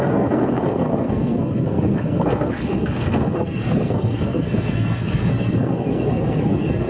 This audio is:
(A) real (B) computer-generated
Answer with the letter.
B